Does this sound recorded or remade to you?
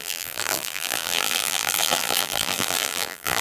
remade